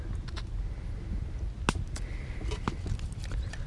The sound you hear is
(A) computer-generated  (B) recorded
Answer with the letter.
B